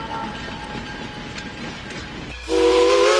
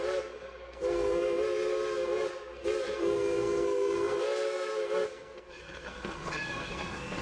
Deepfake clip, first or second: second